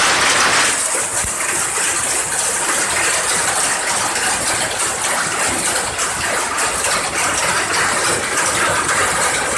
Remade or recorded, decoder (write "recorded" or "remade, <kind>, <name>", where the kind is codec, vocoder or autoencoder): recorded